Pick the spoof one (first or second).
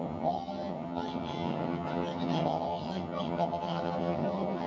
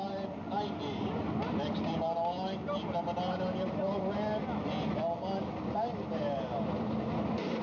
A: first